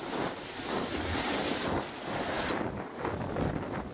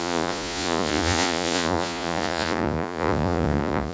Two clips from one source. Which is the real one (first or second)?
first